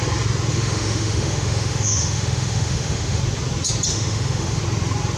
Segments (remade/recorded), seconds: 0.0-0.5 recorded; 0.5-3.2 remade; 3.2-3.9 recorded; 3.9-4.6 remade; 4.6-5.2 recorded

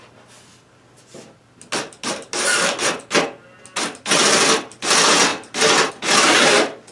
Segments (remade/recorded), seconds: 0.0-6.9 recorded

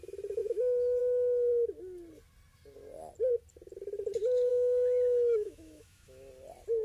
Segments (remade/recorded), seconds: 0.0-4.5 recorded; 4.5-6.3 remade; 6.3-6.8 recorded

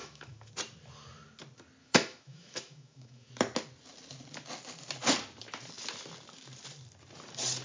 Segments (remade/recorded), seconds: 0.0-0.5 remade; 0.5-1.8 recorded; 1.8-3.3 remade; 3.3-7.6 recorded

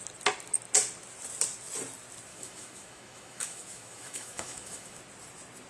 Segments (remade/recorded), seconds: 0.0-2.3 recorded; 2.3-5.0 remade; 5.0-5.7 recorded

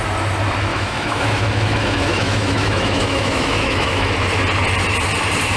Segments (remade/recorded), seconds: 0.0-0.7 recorded; 0.7-4.1 remade; 4.1-5.6 recorded